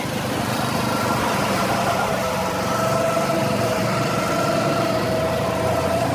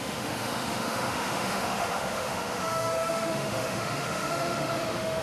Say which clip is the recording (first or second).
first